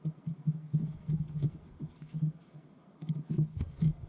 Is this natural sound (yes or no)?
no